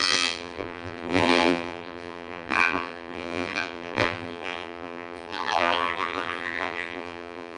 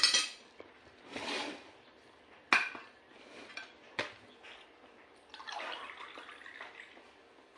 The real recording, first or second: second